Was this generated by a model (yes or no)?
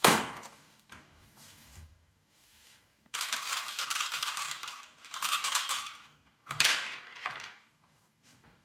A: yes